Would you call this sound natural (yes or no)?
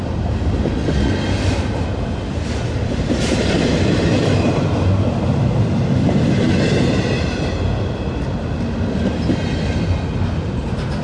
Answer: yes